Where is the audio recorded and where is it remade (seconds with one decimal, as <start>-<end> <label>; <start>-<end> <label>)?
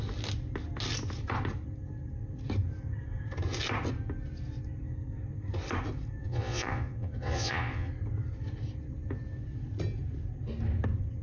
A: 0.0-6.2 recorded; 6.2-7.9 remade; 7.9-11.2 recorded